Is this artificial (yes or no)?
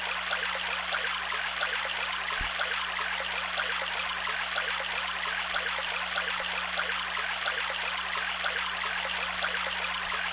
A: no